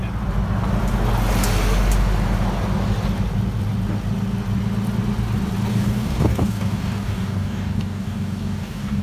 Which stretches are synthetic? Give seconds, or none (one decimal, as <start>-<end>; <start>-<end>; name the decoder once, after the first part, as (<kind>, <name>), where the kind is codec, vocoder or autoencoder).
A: 5.7-9.0 (codec, DAC)